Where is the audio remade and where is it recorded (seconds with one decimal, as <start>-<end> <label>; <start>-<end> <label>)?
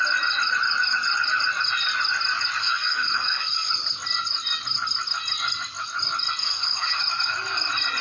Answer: 0.0-2.6 recorded; 2.6-3.7 remade; 3.7-6.4 recorded; 6.4-7.0 remade; 7.0-8.0 recorded